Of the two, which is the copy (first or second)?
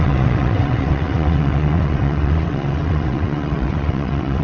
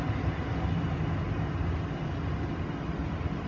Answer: first